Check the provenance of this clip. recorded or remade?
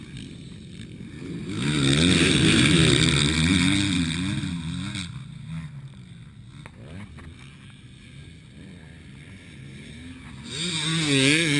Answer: recorded